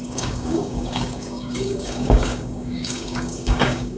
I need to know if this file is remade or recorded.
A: remade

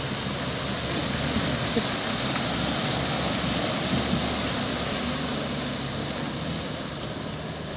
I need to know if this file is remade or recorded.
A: recorded